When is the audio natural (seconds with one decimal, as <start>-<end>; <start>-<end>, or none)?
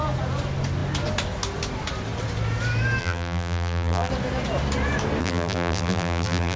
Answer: 0.0-3.0; 4.1-5.2